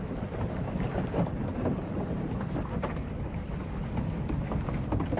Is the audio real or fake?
real